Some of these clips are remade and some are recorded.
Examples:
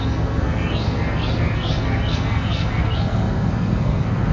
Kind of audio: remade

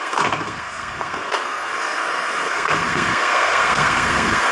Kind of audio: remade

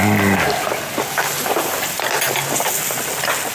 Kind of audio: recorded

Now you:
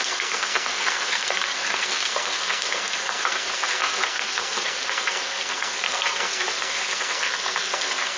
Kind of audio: remade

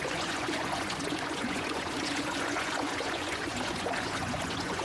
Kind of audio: remade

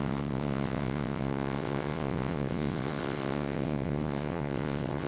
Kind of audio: remade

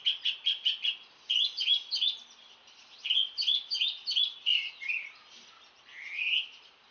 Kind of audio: recorded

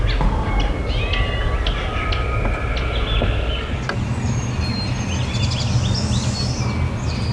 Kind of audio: recorded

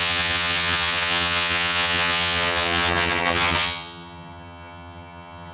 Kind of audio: remade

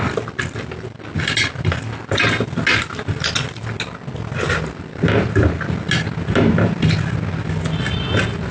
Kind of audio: recorded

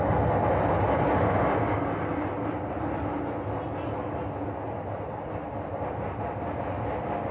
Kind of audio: recorded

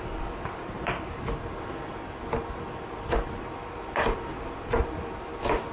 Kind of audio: recorded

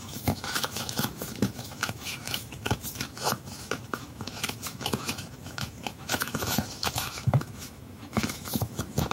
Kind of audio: remade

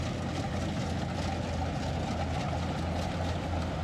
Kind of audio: recorded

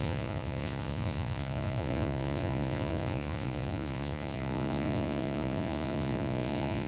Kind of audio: remade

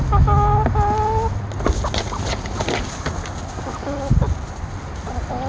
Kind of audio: recorded